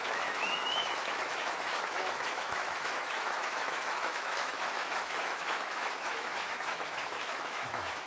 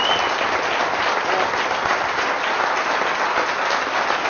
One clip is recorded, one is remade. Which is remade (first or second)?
first